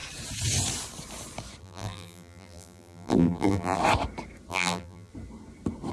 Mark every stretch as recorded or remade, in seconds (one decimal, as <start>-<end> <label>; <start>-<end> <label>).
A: 0.0-1.6 recorded; 1.6-3.8 remade; 3.8-4.5 recorded; 4.5-5.1 remade; 5.1-5.9 recorded